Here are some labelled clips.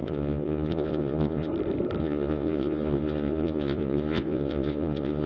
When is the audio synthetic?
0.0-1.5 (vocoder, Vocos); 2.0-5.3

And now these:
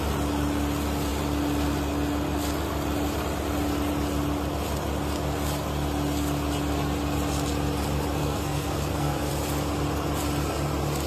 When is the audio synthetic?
8.2-9.3 (codec, SNAC)